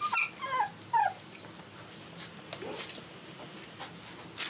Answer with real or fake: real